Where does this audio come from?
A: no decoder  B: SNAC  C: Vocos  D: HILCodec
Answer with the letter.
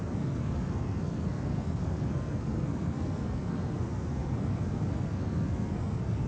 B